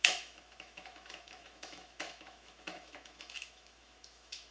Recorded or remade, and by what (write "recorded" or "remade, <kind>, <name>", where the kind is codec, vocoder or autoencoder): remade, autoencoder, DAC-VAE